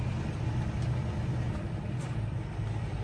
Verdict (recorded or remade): remade